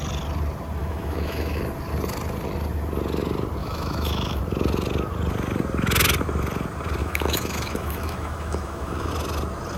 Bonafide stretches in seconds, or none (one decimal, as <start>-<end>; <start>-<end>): 0.0-0.8; 1.6-3.6; 4.4-7.0; 9.1-9.8